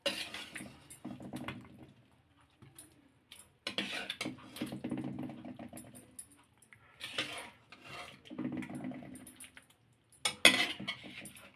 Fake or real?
real